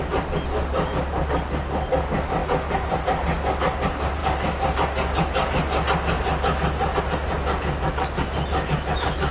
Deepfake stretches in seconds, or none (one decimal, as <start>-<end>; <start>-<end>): none